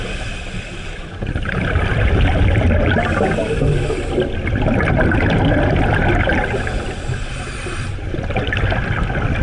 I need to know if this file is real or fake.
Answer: real